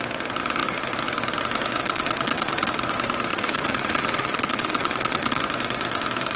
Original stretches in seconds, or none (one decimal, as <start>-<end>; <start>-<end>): 0.0-1.8; 2.7-3.3; 5.4-6.4